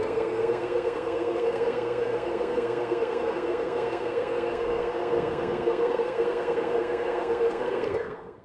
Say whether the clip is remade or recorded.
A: remade